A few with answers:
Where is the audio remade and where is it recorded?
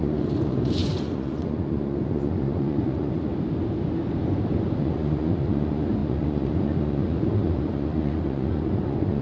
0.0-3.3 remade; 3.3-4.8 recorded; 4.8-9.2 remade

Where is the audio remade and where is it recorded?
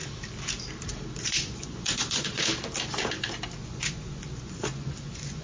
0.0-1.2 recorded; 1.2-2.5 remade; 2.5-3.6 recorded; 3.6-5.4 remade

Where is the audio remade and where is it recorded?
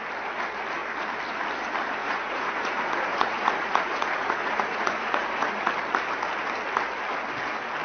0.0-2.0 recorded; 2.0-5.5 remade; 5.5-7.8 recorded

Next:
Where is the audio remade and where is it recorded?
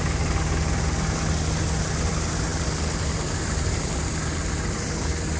0.0-5.4 recorded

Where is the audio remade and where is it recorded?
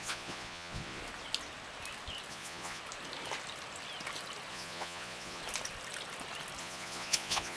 0.0-1.0 remade; 1.0-2.3 recorded; 2.3-2.8 remade; 2.8-4.5 recorded; 4.5-5.4 remade; 5.4-6.6 recorded; 6.6-7.6 remade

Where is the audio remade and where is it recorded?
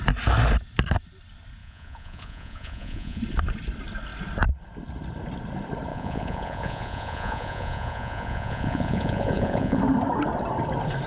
0.0-1.6 recorded; 1.6-3.2 remade; 3.2-5.9 recorded; 5.9-9.8 remade; 9.8-11.1 recorded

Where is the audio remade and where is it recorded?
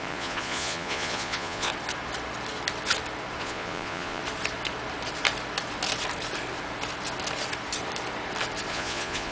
0.0-1.7 remade; 1.7-3.4 recorded; 3.4-4.2 remade; 4.2-8.7 recorded; 8.7-9.3 remade